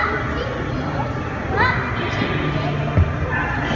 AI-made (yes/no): no